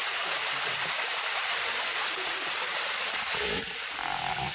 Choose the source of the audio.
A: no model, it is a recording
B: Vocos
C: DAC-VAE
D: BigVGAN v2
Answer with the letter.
A